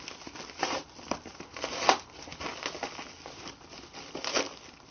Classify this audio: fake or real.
real